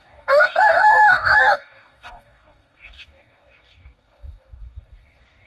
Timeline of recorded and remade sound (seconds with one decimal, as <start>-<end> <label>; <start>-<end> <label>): 0.0-5.5 remade